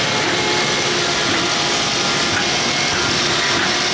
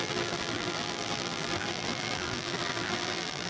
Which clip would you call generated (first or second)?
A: second